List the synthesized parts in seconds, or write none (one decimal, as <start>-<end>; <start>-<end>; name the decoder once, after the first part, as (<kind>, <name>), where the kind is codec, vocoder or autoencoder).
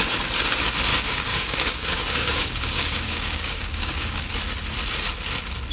0.9-4.3 (codec, DAC)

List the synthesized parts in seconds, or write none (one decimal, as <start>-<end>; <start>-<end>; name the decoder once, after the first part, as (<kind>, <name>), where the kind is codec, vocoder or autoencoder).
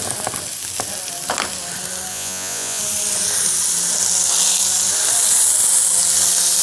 2.1-2.8 (vocoder, Vocos)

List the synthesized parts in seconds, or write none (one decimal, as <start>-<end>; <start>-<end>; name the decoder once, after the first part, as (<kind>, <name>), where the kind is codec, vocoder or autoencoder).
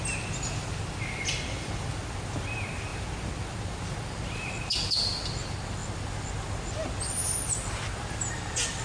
none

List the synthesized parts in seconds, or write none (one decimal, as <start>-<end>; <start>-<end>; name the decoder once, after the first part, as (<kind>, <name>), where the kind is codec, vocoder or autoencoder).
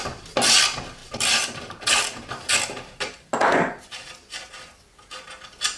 1.0-4.5 (vocoder, BigVGAN v2)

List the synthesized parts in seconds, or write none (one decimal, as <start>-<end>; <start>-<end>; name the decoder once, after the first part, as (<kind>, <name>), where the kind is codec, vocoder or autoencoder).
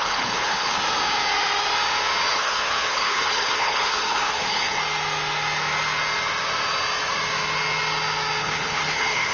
0.0-0.8 (codec, HILCodec); 2.3-4.8; 8.4-9.3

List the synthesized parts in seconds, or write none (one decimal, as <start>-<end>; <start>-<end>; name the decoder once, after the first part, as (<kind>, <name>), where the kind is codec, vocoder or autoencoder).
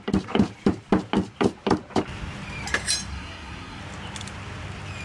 3.1-3.8 (codec, SNAC)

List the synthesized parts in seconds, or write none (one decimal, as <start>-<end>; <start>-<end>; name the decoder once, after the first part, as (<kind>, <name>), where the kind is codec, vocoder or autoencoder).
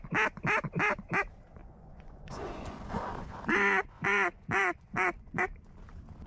1.6-5.4 (vocoder, Vocos)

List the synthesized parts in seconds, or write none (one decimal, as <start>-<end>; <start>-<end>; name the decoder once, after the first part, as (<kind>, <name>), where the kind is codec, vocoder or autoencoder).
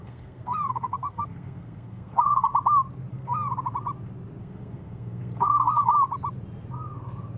0.0-2.5 (codec, SNAC); 3.1-3.5; 4.4-5.9